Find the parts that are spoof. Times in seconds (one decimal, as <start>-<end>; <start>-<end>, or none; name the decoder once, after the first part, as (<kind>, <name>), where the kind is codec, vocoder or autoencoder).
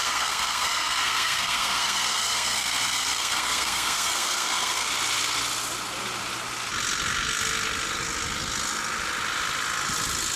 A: 0.0-4.9 (codec, SNAC)